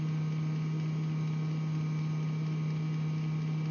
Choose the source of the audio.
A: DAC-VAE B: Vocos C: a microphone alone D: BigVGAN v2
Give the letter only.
C